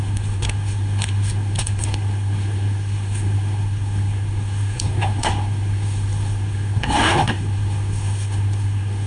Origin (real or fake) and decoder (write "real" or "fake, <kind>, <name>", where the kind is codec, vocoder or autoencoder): fake, codec, SNAC